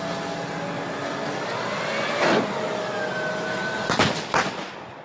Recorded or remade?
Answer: recorded